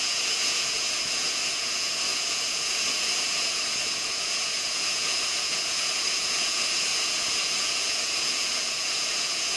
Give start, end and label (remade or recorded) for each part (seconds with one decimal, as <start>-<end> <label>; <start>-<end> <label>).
0.0-9.6 remade